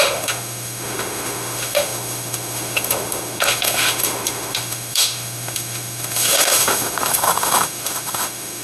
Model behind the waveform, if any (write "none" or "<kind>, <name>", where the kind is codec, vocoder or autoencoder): autoencoder, DAC-VAE